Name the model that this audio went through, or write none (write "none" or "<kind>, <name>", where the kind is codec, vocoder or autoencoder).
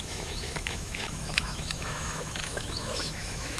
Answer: autoencoder, DAC-VAE